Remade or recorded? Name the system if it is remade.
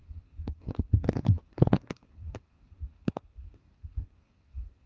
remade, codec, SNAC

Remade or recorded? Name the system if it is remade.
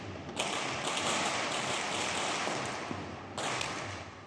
recorded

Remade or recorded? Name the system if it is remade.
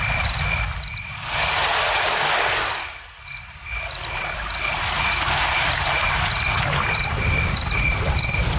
recorded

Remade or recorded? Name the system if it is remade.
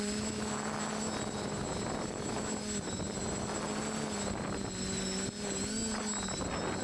recorded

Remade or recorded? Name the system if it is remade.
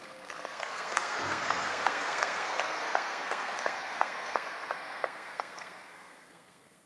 remade, codec, SNAC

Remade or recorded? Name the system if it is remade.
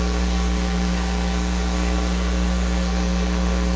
remade, codec, SNAC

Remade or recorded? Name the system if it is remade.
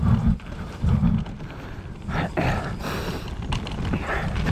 recorded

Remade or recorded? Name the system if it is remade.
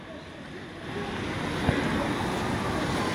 recorded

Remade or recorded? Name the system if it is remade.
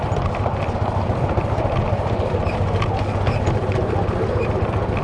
recorded